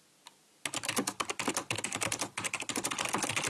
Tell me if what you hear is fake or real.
real